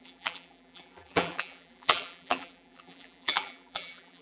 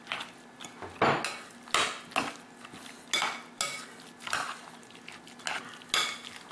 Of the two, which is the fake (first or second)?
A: first